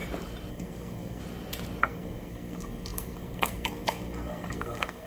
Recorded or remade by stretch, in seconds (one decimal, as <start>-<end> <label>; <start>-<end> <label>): 0.0-0.5 recorded; 0.5-1.2 remade; 1.2-1.8 recorded; 1.8-5.1 remade